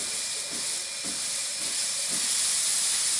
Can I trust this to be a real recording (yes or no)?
yes